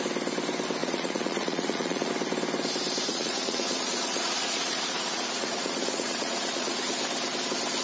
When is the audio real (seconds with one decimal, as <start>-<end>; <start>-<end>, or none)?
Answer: 0.0-0.8; 2.1-3.1; 6.9-7.8

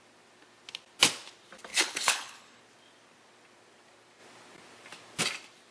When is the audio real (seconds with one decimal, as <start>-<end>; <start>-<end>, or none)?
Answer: 0.0-1.7; 2.6-5.7

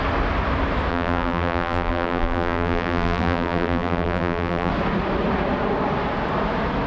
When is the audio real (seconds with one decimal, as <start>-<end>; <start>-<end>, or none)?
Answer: 0.0-0.9; 4.7-6.9

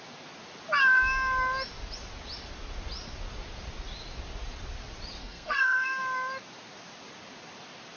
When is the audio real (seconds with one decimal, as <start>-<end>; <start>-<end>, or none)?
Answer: 0.0-5.2; 6.0-8.0

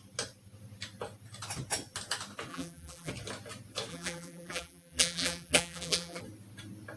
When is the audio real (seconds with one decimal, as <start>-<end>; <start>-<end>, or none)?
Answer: 0.0-2.5; 3.1-3.9; 6.2-7.0